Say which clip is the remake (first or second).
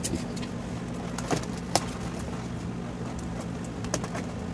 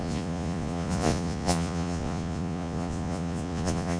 second